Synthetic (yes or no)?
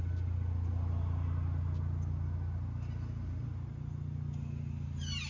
no